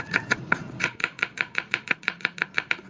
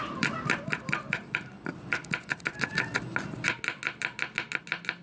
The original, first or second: second